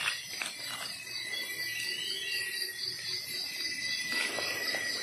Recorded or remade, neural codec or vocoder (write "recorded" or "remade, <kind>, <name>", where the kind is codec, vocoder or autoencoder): recorded